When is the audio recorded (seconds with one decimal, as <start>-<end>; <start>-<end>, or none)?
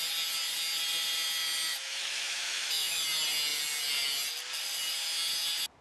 0.0-1.7; 3.0-5.8